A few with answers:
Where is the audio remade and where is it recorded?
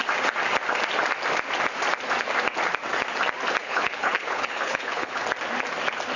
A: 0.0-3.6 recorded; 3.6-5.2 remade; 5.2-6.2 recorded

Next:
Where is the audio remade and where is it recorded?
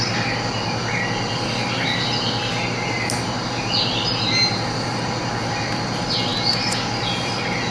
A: 0.0-7.7 recorded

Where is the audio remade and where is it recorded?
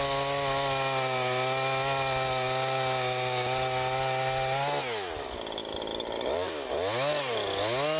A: 0.0-8.0 recorded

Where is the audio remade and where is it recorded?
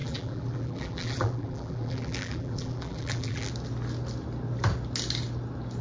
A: 0.0-3.5 remade; 3.5-5.8 recorded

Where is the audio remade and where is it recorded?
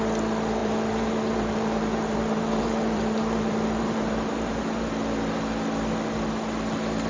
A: 0.0-0.6 recorded; 0.6-4.9 remade; 4.9-7.1 recorded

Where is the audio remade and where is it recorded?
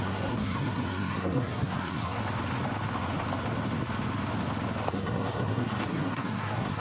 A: 0.0-2.2 remade; 2.2-4.9 recorded; 4.9-6.8 remade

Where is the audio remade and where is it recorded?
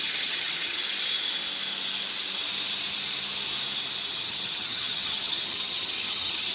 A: 0.0-0.8 remade; 0.8-4.1 recorded; 4.1-6.5 remade